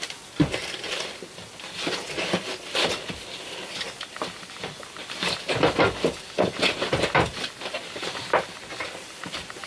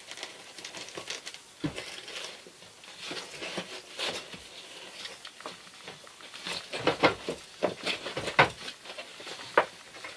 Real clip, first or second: second